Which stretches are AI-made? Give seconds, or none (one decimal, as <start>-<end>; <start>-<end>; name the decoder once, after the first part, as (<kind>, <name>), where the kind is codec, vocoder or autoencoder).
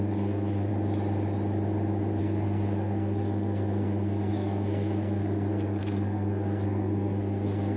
0.0-0.7 (codec, SNAC); 2.2-7.8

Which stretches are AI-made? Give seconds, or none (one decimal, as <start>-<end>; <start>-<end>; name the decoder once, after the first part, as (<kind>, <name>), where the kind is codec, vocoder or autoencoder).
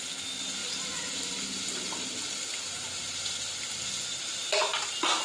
none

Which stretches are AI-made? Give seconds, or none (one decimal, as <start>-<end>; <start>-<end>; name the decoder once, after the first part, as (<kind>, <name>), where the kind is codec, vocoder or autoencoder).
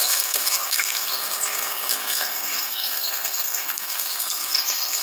0.0-5.0 (codec, SNAC)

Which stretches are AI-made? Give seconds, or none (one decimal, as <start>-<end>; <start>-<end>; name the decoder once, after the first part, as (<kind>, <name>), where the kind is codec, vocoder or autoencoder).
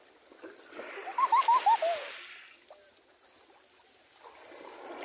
none